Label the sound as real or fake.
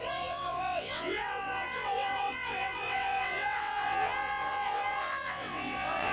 fake